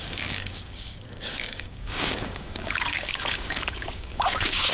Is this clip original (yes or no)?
no